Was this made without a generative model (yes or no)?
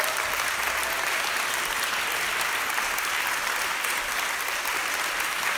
yes